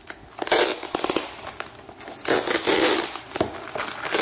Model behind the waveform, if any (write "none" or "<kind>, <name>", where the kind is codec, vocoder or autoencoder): none